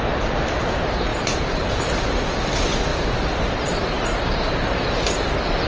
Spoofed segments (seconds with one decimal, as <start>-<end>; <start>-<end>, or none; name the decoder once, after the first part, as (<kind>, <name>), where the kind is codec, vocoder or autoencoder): none